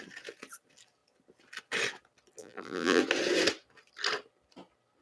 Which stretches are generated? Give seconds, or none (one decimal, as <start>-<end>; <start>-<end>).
2.4-3.0